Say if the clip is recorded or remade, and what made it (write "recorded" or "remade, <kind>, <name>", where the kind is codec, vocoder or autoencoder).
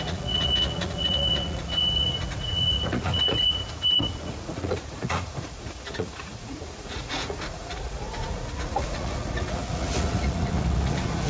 remade, vocoder, Vocos